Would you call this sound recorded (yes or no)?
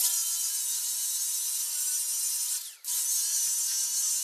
yes